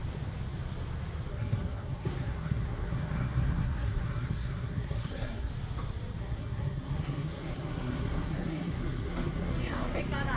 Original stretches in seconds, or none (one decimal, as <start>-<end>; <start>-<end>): 0.0-1.3; 5.5-6.2; 10.0-10.4